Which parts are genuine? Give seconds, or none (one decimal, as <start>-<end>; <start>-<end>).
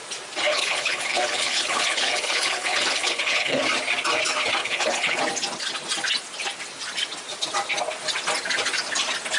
0.0-0.5; 3.6-4.6; 5.2-9.4